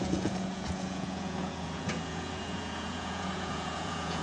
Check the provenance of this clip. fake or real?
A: fake